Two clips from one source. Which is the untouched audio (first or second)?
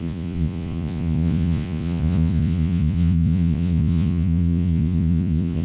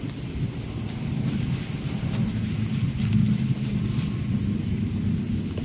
second